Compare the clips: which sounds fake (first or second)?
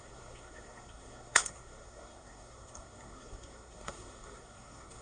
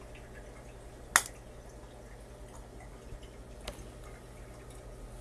first